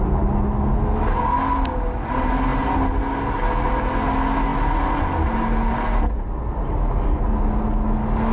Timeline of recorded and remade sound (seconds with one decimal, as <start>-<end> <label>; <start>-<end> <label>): 0.0-8.3 recorded